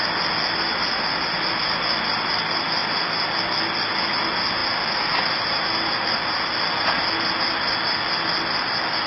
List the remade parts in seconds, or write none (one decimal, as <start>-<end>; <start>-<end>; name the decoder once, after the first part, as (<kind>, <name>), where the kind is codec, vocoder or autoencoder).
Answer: none